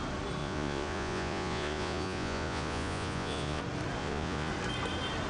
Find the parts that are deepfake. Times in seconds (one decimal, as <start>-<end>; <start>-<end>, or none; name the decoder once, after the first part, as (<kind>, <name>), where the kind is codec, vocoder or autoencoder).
0.4-3.6 (vocoder, Vocos); 4.0-4.5